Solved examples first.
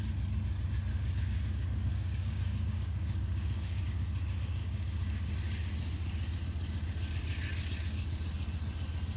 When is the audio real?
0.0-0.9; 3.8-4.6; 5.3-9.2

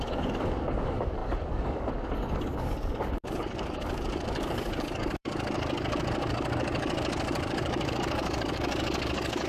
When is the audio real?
none

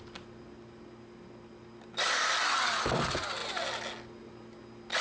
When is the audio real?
0.0-5.0

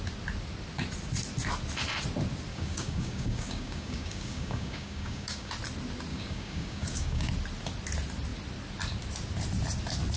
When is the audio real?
0.0-2.5; 5.5-6.1; 7.3-10.2

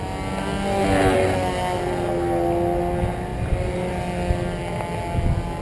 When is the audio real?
0.0-5.6